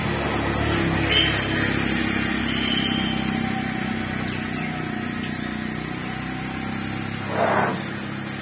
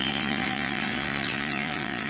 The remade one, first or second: second